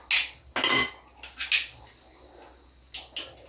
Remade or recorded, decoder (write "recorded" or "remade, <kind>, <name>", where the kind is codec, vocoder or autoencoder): recorded